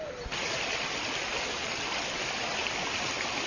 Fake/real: real